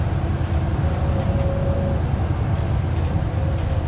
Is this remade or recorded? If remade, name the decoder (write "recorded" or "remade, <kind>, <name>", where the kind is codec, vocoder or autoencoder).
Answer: recorded